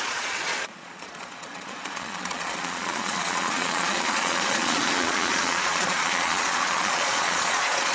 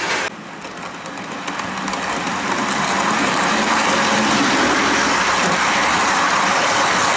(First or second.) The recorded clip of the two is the second